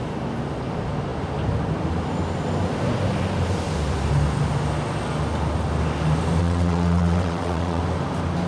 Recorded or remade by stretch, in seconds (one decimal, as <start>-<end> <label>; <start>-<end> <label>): 0.0-6.4 recorded; 6.4-7.8 remade; 7.8-8.5 recorded